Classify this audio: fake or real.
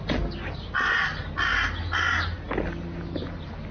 real